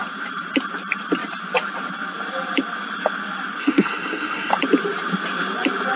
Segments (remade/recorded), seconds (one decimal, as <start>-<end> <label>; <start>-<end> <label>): 0.0-3.6 recorded; 3.6-4.5 remade; 4.5-6.0 recorded